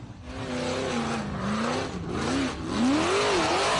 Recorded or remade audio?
recorded